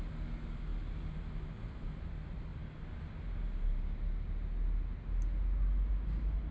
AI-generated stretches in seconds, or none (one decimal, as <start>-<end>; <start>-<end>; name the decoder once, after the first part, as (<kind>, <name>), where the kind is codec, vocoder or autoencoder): none